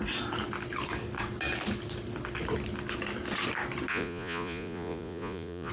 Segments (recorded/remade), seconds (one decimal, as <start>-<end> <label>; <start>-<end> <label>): 0.0-3.9 recorded; 3.9-5.7 remade